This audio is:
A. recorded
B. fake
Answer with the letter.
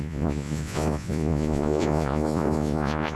B